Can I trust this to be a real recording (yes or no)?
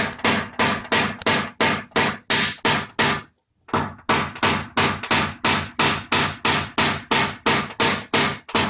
yes